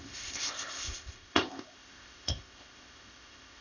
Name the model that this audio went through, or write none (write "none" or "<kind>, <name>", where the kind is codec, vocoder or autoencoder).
codec, ZipCodec